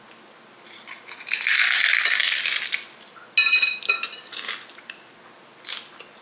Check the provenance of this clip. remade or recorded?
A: recorded